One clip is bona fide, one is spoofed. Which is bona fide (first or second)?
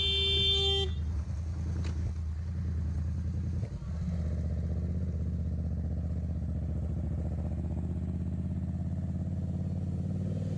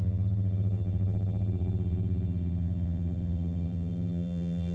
first